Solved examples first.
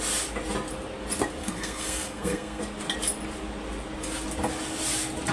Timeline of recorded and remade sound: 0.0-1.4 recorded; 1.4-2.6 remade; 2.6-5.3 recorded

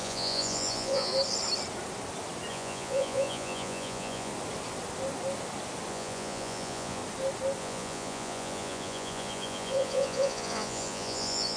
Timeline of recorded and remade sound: 0.0-1.1 remade; 1.1-2.5 recorded; 2.5-4.3 remade; 4.3-5.9 recorded; 5.9-7.0 remade; 7.0-7.6 recorded; 7.6-11.6 remade

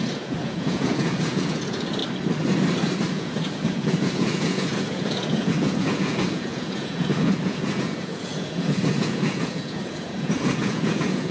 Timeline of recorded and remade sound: 0.0-2.0 remade; 2.0-3.1 recorded; 3.1-11.3 remade

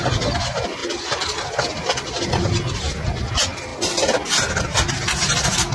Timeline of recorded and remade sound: 0.0-0.8 recorded; 0.8-3.3 remade; 3.3-5.7 recorded

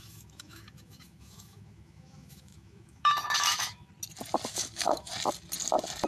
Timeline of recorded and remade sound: 0.0-3.9 remade; 3.9-4.5 recorded; 4.5-5.1 remade; 5.1-6.1 recorded

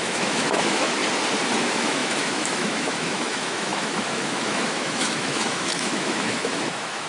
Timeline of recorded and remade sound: 0.0-1.0 remade; 1.0-1.6 recorded; 1.6-7.1 remade